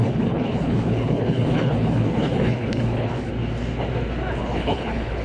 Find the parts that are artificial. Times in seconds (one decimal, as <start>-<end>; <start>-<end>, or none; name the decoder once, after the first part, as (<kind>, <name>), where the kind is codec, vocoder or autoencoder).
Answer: 0.0-3.3 (codec, HILCodec); 4.4-5.2